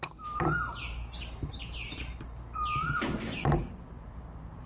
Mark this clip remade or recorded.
remade